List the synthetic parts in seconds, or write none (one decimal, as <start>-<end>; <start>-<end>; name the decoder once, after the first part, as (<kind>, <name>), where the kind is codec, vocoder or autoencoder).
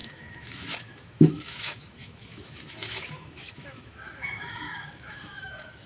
0.0-5.9 (autoencoder, DAC-VAE)